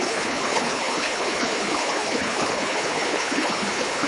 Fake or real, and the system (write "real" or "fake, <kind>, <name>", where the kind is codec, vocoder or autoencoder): fake, codec, HILCodec